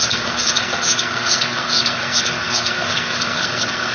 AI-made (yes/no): yes